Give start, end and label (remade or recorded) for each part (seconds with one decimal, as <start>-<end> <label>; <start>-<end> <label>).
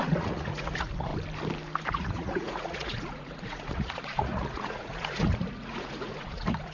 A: 0.0-1.1 remade; 1.1-1.8 recorded; 1.8-6.7 remade